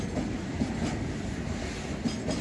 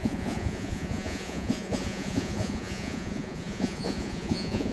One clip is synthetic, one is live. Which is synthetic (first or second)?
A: second